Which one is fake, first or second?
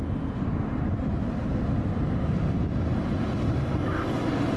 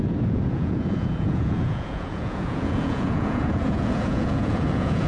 second